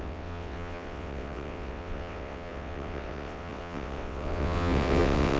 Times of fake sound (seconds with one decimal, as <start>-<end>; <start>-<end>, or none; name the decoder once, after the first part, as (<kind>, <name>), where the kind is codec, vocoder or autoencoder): 0.0-5.4 (vocoder, WaveNeXt)